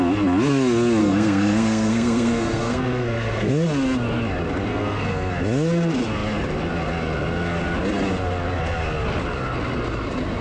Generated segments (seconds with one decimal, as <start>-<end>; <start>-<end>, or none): 1.0-3.5; 4.7-5.3